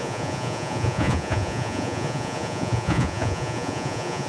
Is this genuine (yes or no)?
no